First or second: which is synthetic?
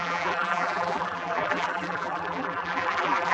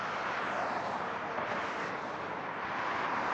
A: first